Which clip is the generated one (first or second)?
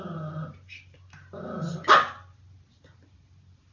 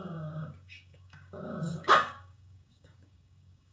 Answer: second